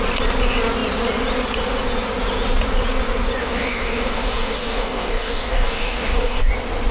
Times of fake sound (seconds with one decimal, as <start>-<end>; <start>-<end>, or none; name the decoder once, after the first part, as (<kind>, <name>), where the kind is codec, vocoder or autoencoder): 3.4-6.5 (codec, DAC)

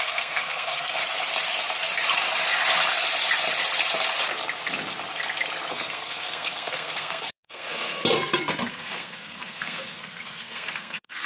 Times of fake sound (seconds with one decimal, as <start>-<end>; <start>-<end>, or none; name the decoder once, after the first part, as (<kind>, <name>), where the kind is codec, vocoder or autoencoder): 0.0-1.0 (codec, SNAC); 5.7-8.0; 8.7-11.3

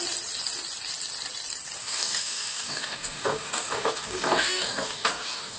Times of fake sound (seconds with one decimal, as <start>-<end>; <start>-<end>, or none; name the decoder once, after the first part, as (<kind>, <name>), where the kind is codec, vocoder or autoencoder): 1.8-5.6 (codec, DAC)

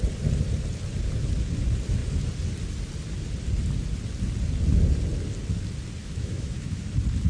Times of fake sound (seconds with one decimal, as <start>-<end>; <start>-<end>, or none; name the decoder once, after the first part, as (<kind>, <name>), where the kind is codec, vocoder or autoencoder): 6.0-6.8 (autoencoder, DAC-VAE)

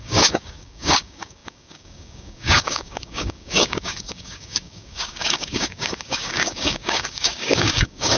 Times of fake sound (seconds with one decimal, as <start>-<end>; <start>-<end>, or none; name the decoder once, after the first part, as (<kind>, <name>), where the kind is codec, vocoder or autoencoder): 0.0-8.2 (codec, DAC)